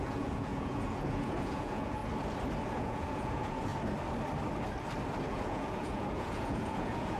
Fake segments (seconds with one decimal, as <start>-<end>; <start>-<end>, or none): 0.0-2.0; 2.7-3.7; 5.2-7.2